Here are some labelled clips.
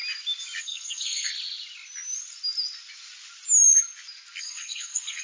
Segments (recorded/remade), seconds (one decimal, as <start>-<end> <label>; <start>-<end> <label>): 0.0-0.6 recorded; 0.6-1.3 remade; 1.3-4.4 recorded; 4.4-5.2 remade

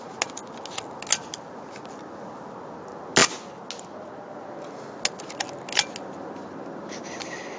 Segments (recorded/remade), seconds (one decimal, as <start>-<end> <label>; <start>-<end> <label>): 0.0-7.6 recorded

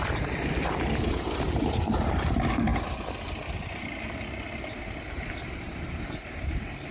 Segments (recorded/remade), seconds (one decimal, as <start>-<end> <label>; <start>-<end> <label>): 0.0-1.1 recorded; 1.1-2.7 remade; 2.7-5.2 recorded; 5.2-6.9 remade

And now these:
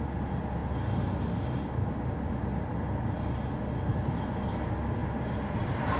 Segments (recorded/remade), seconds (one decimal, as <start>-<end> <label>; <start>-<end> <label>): 0.0-6.0 recorded

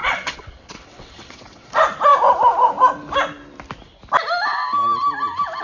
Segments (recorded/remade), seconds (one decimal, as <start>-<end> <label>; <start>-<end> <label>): 0.0-1.7 remade; 1.7-5.6 recorded

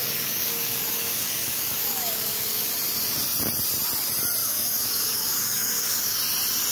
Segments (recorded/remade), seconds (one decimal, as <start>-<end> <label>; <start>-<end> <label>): 0.0-2.7 remade; 2.7-4.4 recorded; 4.4-6.2 remade; 6.2-6.7 recorded

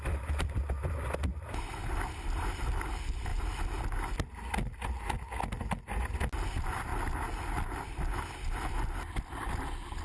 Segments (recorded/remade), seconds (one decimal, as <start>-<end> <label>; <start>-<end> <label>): 0.0-10.0 recorded

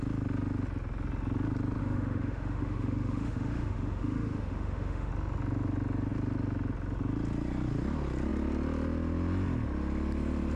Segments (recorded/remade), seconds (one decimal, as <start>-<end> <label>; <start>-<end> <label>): 0.0-1.8 recorded; 1.8-5.1 remade; 5.1-10.6 recorded